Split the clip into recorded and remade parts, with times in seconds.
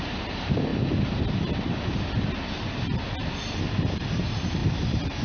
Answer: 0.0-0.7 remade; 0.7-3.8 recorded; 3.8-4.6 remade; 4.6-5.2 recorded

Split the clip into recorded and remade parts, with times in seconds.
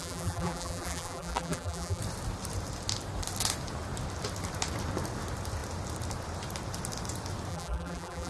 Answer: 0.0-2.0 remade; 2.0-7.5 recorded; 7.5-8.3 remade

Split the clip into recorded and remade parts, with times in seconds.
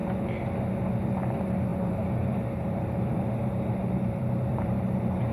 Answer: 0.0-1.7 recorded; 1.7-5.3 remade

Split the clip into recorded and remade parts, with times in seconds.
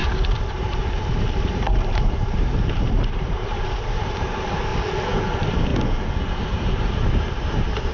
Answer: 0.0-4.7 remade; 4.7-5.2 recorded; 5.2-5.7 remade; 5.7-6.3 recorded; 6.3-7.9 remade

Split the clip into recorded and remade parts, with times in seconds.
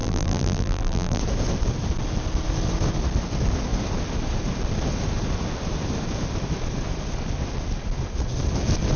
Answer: 0.0-1.2 remade; 1.2-9.0 recorded